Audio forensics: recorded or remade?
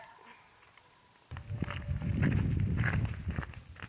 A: recorded